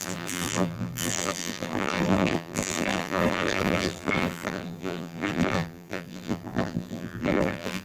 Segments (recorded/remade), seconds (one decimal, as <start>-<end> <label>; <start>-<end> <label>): 0.0-7.8 remade